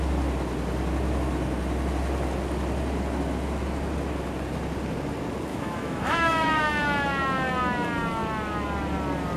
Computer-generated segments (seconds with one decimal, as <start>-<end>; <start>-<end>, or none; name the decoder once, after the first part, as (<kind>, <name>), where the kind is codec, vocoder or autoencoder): 5.5-6.6 (autoencoder, DAC-VAE)